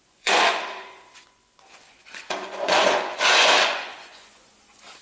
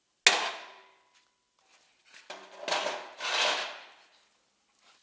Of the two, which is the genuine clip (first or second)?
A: second